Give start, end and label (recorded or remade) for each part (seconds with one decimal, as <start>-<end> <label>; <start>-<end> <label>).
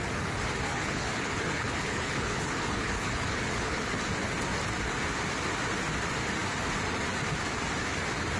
0.0-0.7 recorded; 0.7-4.0 remade; 4.0-8.4 recorded